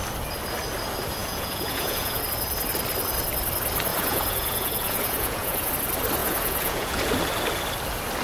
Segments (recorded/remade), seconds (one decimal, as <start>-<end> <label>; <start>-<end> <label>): 0.0-1.2 recorded; 1.2-2.2 remade; 2.2-3.9 recorded; 3.9-5.7 remade; 5.7-6.2 recorded; 6.2-7.0 remade; 7.0-8.2 recorded